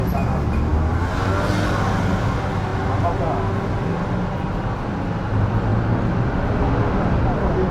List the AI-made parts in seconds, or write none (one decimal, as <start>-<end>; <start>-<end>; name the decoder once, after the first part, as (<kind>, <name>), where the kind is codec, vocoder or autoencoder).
none